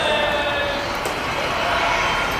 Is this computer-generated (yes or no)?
yes